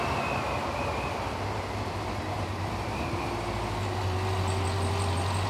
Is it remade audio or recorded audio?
recorded